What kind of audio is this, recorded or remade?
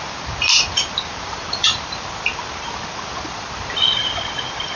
remade